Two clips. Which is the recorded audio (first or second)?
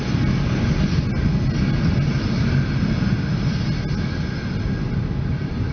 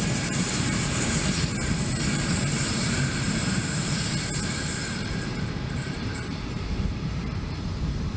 first